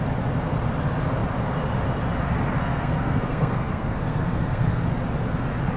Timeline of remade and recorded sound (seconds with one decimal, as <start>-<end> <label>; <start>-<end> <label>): 0.0-2.6 recorded; 2.6-4.8 remade; 4.8-5.8 recorded